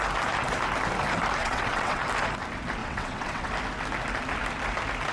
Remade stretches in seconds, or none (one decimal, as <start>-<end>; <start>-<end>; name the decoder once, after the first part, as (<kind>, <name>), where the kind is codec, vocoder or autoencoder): 1.4-2.0 (vocoder, WaveNeXt); 2.8-3.5